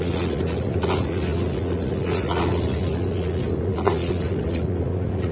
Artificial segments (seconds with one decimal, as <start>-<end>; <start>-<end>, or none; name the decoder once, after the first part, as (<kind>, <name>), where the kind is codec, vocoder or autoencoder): 0.0-5.3 (vocoder, Vocos)